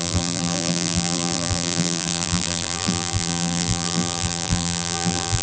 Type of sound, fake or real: fake